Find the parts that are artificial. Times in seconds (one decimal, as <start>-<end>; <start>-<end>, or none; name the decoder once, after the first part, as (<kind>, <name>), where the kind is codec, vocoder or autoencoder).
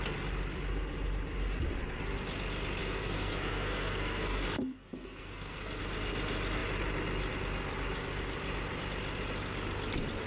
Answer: 2.8-5.8 (codec, SNAC)